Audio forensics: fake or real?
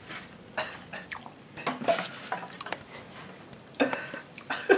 real